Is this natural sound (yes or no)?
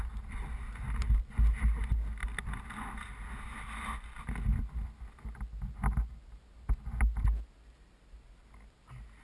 yes